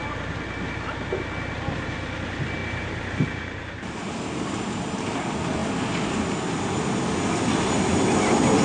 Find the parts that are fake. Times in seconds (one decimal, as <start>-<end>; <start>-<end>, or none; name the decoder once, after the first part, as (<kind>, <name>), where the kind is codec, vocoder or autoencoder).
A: 2.6-4.2 (vocoder, BigVGAN v2)

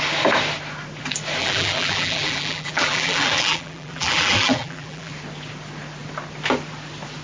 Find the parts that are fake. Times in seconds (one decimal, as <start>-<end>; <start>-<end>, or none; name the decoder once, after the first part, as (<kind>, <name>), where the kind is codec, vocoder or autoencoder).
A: 1.4-5.1 (vocoder, BigVGAN v2)

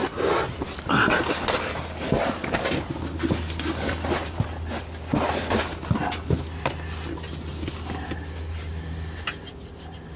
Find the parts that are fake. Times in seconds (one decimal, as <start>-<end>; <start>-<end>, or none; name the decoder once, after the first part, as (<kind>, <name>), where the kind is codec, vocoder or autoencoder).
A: 0.0-0.6 (vocoder, BigVGAN v2)

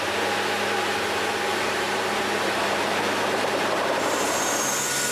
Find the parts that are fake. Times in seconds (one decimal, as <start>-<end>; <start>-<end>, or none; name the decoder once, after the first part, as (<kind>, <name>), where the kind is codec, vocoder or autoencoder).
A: 1.5-4.6 (vocoder, BigVGAN v2)

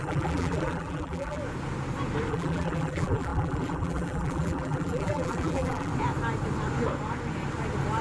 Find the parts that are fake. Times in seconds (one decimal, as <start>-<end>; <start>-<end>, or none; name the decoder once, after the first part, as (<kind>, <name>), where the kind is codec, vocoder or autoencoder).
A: 0.0-1.4 (vocoder, BigVGAN v2); 2.3-5.9